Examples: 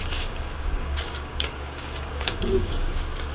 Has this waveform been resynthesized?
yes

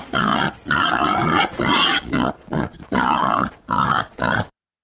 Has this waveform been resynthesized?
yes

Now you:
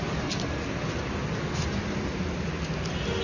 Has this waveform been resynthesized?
no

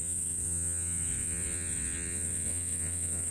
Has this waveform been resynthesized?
yes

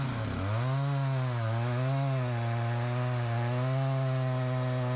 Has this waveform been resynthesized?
no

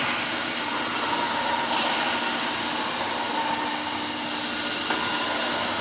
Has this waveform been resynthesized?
no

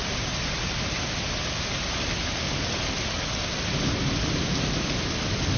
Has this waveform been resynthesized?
no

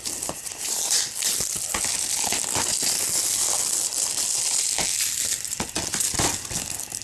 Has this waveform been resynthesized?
no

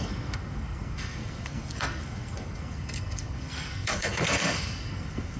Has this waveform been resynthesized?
yes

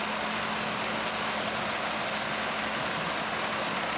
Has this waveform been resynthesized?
no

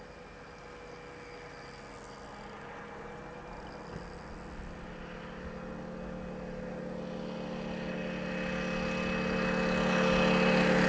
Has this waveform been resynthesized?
no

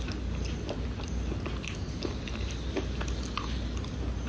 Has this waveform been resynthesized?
no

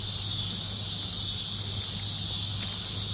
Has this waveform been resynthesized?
no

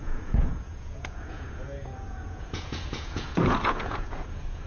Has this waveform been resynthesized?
yes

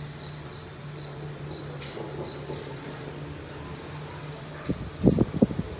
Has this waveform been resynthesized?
no